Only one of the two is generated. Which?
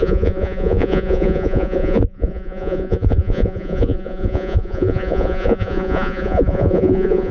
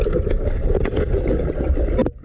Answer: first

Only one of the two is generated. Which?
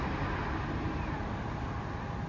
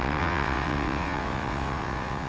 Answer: second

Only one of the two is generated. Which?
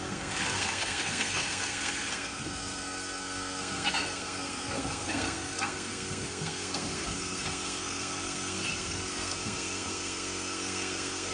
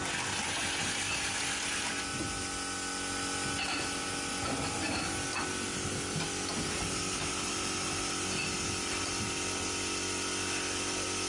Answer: first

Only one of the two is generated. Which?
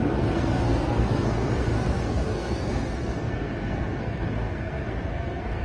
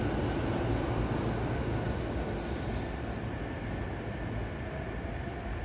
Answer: first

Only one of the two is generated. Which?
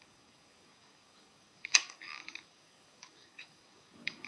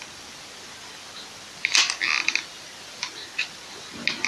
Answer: first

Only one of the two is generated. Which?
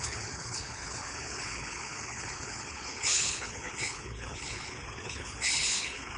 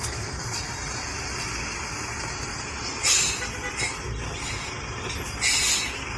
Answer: first